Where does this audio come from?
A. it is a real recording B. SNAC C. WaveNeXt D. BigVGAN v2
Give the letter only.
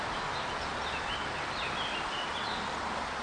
A